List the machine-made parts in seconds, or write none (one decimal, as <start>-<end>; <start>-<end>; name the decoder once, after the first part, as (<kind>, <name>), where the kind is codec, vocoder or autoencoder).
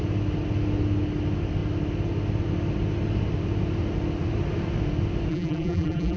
5.3-6.2 (vocoder, BigVGAN v2)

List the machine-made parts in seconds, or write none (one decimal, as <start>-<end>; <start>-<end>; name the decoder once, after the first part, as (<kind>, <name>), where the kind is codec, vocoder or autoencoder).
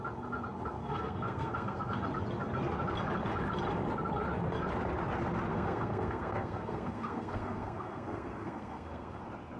0.8-2.0 (codec, SNAC); 5.5-9.2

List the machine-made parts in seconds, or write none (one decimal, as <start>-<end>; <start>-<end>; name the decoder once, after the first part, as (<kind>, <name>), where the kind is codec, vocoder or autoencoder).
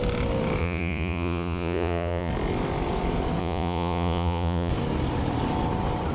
0.6-2.3 (vocoder, Vocos); 3.4-4.7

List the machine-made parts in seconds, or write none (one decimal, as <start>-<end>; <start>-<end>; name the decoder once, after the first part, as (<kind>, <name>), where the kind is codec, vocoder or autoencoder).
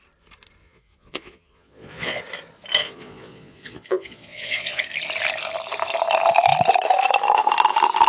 0.6-2.2 (vocoder, Vocos); 2.8-4.8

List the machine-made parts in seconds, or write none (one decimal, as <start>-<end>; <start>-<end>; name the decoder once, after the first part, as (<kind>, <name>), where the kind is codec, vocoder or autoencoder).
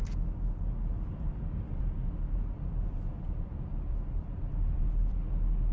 0.9-1.8 (vocoder, BigVGAN v2); 3.1-5.3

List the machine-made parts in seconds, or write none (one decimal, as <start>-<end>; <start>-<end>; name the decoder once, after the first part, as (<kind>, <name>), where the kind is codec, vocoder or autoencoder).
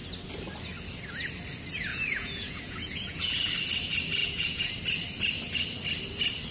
1.9-3.5 (vocoder, Vocos); 4.2-4.7